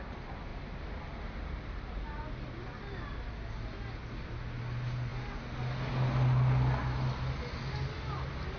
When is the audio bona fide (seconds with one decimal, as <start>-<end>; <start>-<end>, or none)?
0.0-8.6